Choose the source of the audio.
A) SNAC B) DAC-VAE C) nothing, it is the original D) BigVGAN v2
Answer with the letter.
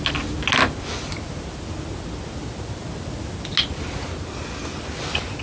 C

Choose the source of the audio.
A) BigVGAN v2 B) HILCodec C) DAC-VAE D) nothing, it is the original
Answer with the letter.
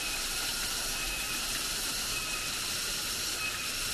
D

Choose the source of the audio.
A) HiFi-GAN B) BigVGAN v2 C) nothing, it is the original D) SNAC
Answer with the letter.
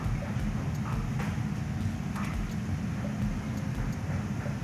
C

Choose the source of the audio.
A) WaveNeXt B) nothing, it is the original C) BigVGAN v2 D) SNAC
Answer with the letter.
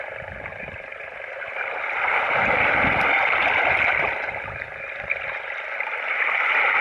B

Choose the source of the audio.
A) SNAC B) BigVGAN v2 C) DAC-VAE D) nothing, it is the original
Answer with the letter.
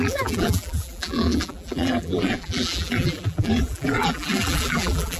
B